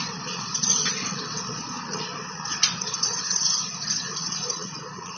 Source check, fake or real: fake